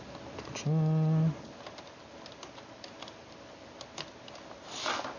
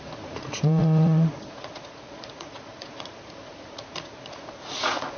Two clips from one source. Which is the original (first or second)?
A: first